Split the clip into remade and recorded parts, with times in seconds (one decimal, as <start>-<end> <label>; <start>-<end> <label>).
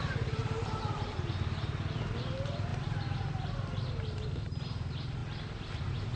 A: 0.0-6.2 recorded